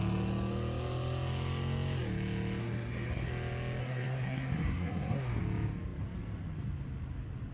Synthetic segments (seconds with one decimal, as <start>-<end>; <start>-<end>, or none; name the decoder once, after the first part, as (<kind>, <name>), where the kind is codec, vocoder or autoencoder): 2.6-3.3 (codec, SNAC); 3.8-5.4